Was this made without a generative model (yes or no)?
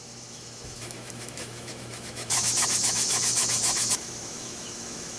no